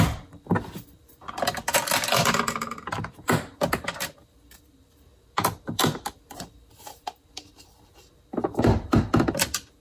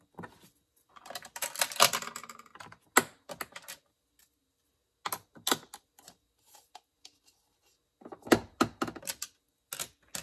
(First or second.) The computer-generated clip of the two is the first